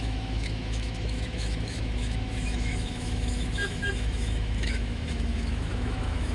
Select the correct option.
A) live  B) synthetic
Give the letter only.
B